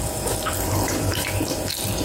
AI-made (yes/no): yes